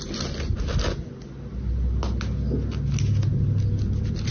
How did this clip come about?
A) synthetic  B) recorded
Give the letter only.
B